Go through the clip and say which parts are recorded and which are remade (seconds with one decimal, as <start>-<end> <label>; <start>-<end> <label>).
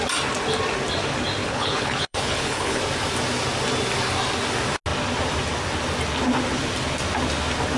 0.0-1.4 recorded; 1.4-2.8 remade; 2.8-7.8 recorded